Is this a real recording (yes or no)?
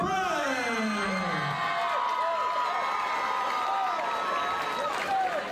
yes